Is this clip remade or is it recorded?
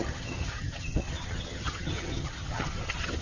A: remade